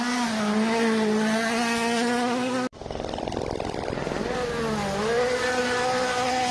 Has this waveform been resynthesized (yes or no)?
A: no